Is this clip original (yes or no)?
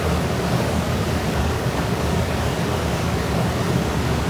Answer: no